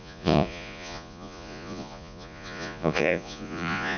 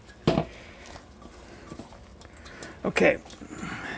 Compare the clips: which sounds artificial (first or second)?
first